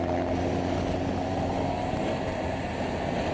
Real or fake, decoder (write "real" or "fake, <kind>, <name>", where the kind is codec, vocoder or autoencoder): real